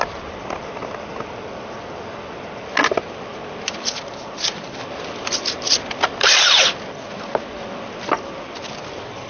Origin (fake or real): real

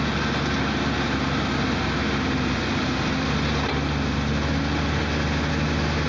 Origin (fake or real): real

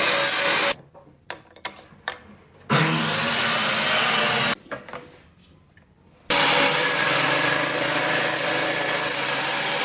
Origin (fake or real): real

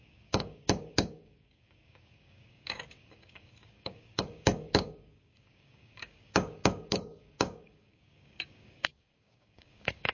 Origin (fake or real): fake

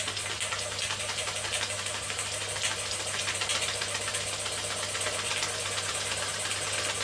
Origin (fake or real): real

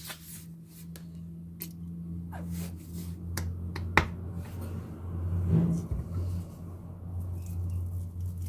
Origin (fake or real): real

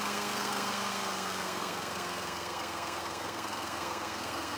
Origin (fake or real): fake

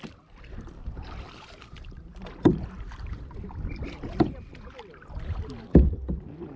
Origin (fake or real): fake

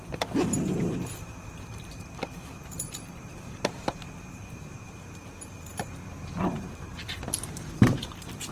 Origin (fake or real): fake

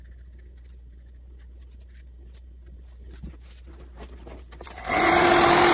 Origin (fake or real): real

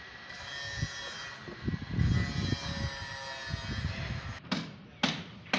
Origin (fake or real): real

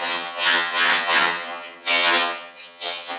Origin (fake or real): fake